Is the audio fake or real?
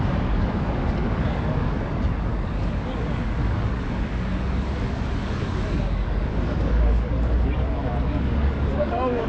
fake